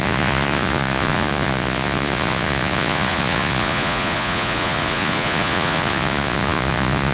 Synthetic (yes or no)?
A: yes